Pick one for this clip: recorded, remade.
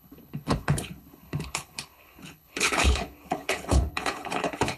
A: remade